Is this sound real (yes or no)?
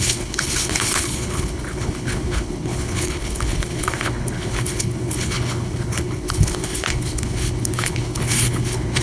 no